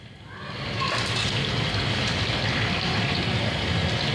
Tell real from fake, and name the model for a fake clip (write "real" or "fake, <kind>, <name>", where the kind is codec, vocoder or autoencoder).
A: real